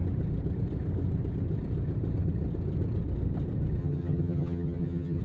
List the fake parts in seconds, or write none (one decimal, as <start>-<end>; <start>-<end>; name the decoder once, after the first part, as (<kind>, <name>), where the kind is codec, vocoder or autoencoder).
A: 3.8-5.2 (vocoder, HiFi-GAN)